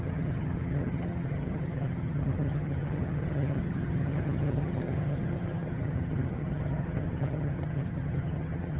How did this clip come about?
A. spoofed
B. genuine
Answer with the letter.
A